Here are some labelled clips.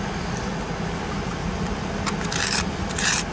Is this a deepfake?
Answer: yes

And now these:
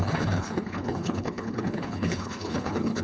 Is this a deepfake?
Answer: yes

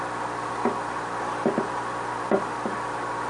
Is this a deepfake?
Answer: no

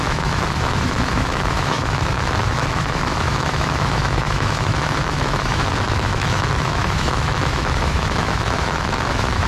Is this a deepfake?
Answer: yes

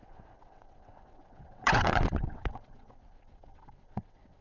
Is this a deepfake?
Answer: yes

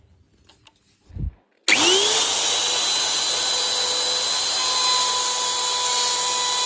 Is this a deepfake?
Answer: no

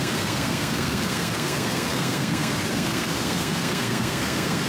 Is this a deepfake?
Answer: yes